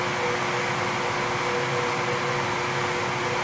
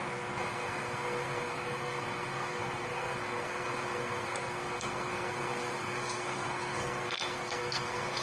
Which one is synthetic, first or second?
second